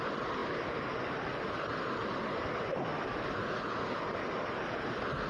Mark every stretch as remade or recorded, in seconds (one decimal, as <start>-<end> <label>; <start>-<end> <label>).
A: 0.0-5.3 recorded